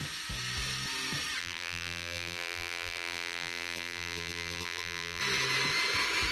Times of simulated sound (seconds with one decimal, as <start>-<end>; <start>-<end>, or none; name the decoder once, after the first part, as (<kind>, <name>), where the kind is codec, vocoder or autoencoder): 1.4-5.2 (vocoder, BigVGAN v2)